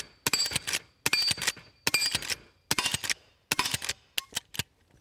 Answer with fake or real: real